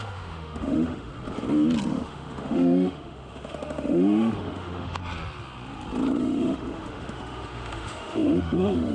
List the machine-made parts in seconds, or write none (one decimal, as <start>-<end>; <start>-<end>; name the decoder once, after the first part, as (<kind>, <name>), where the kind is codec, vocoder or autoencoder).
0.0-1.1 (autoencoder, DAC-VAE); 1.9-5.0; 6.2-8.9